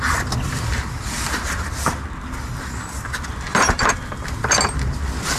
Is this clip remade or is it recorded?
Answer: recorded